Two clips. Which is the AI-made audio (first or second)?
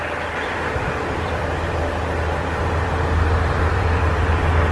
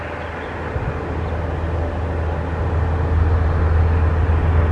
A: first